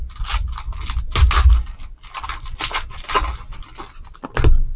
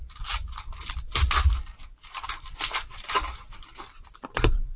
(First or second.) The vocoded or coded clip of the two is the second